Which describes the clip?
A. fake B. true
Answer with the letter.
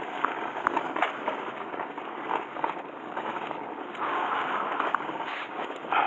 A